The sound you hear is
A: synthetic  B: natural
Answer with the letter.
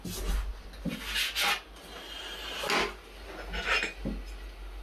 B